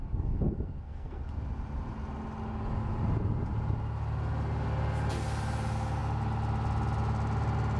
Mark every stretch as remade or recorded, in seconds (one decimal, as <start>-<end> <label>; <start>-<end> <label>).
0.0-1.3 remade; 1.3-7.8 recorded